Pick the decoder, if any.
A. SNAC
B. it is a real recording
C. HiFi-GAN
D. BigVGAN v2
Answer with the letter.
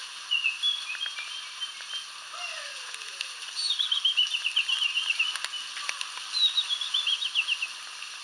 B